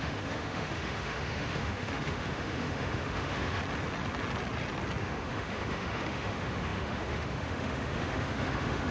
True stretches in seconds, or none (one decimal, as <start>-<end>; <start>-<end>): 3.6-5.0

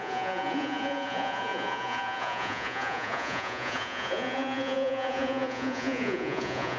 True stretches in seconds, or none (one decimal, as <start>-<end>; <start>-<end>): none

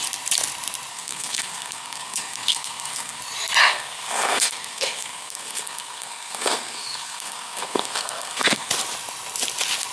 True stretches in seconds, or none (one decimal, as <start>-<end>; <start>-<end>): 0.0-0.9; 3.2-3.6; 8.7-9.9